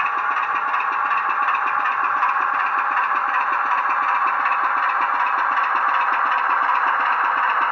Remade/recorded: recorded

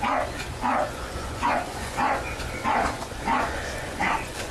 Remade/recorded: remade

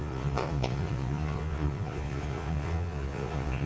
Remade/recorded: remade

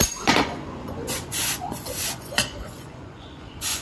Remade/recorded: remade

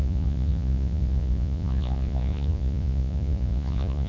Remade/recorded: remade